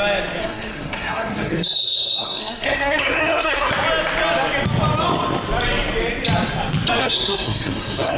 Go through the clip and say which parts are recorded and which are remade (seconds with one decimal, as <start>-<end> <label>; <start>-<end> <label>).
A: 0.0-0.4 recorded; 0.4-3.7 remade; 3.7-7.0 recorded; 7.0-8.2 remade